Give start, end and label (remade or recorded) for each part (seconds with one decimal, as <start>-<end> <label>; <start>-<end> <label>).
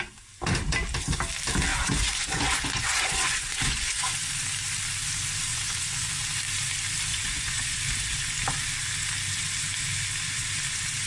0.0-1.7 recorded; 1.7-4.3 remade; 4.3-5.5 recorded; 5.5-6.1 remade; 6.1-7.1 recorded; 7.1-7.8 remade; 7.8-11.1 recorded